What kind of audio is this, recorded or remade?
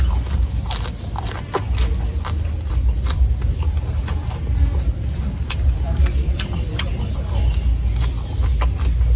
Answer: recorded